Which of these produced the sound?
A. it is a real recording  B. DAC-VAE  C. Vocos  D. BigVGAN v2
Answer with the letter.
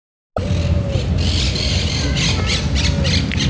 A